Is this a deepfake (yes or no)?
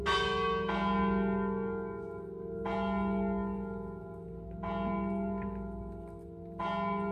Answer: no